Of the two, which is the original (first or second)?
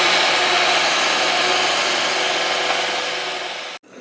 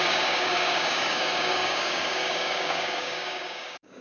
first